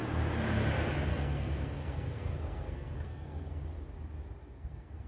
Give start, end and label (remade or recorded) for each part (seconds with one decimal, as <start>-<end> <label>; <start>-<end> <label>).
0.0-1.1 recorded; 1.1-3.6 remade; 3.6-4.4 recorded; 4.4-5.1 remade